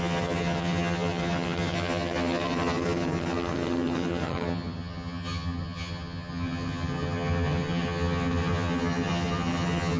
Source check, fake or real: fake